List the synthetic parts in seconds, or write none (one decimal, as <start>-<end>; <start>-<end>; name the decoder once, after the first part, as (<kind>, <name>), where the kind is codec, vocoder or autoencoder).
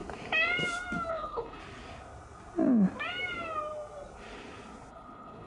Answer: 1.1-1.6 (codec, HILCodec); 4.9-5.5